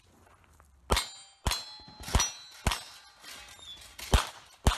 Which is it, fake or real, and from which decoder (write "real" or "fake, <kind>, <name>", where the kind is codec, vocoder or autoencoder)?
real